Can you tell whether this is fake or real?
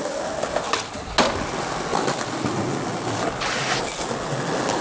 real